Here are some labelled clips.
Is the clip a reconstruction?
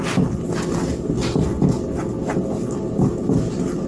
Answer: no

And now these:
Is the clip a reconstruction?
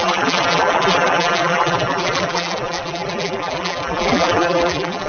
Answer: yes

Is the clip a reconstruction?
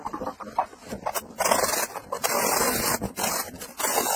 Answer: no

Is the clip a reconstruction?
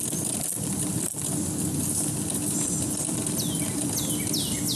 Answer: no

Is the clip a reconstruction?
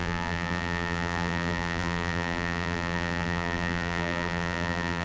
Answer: yes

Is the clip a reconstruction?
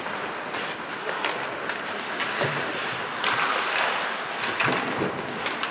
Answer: no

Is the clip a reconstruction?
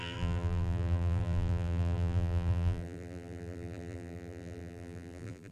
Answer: yes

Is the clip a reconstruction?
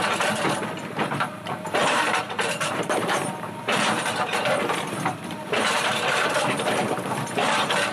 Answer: yes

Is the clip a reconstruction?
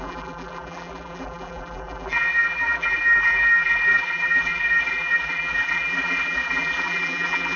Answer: yes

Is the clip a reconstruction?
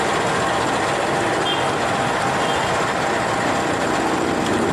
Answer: no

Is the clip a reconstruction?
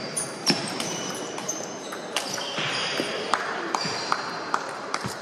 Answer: yes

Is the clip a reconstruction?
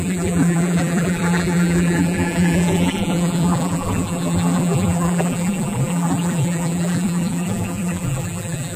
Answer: yes